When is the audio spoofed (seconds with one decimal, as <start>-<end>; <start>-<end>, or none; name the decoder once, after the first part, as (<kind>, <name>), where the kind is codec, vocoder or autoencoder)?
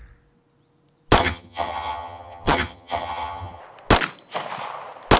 1.2-3.6 (vocoder, HiFi-GAN)